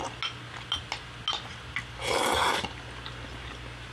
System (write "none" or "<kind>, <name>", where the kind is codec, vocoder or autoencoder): none